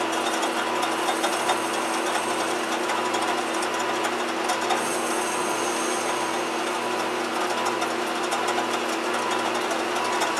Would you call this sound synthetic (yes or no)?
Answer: no